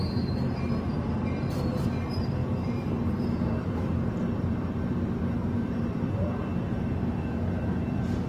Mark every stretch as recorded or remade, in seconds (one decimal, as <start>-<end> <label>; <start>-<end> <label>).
0.0-8.3 remade